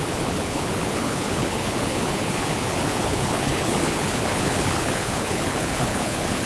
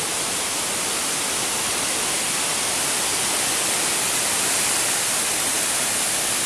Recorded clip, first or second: second